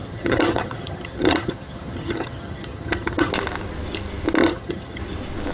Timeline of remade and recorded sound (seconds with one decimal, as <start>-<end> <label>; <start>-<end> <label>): 0.0-3.3 remade; 3.3-4.4 recorded; 4.4-5.0 remade; 5.0-5.5 recorded